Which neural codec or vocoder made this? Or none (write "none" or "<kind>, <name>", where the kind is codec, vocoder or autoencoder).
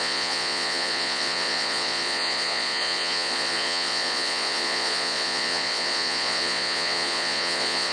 vocoder, Vocos